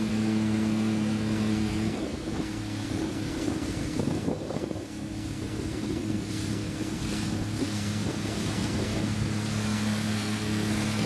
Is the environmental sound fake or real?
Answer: fake